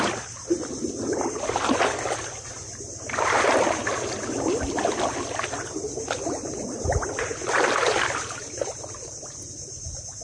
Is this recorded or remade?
recorded